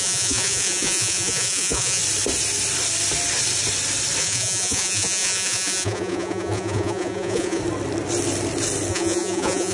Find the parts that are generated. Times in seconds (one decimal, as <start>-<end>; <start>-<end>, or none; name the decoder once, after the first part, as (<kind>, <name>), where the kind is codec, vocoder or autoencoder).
0.0-2.0 (vocoder, Vocos); 4.2-7.6; 8.9-9.7